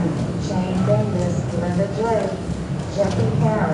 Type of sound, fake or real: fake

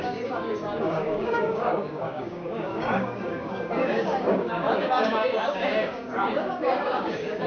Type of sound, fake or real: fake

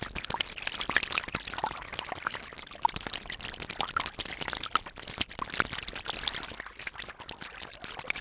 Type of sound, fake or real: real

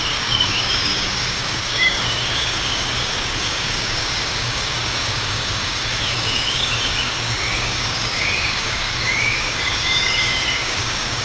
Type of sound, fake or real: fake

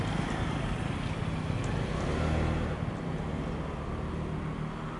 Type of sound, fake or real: real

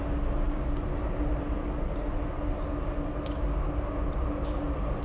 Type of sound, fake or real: real